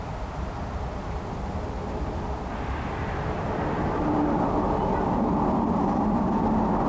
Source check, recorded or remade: recorded